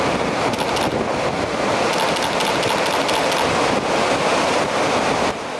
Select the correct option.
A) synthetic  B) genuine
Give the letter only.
B